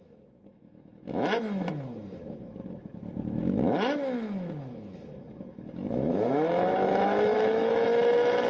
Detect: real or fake fake